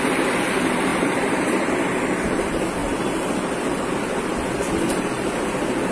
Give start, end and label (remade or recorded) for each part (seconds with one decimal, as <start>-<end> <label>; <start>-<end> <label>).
0.0-0.9 recorded; 0.9-1.7 remade; 1.7-5.9 recorded